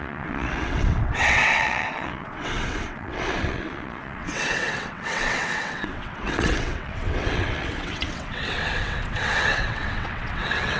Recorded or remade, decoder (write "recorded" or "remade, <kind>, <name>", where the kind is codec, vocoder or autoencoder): remade, vocoder, WaveNeXt